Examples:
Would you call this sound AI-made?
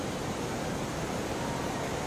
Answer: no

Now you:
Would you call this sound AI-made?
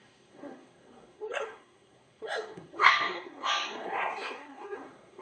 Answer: yes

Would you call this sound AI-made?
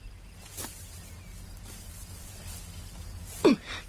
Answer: no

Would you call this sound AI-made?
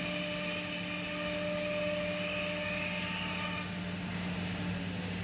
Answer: no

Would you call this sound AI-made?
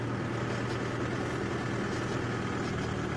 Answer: no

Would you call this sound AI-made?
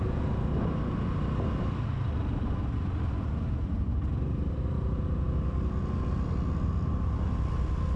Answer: no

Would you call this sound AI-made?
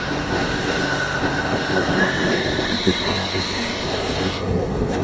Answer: yes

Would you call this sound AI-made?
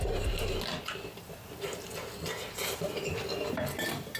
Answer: no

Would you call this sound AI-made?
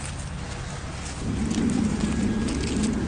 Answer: no